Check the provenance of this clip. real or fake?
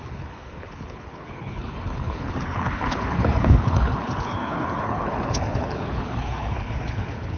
fake